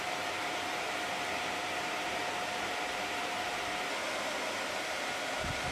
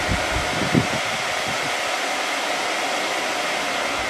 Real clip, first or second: second